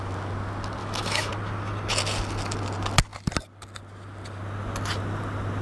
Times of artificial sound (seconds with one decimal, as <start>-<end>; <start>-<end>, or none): 0.8-1.3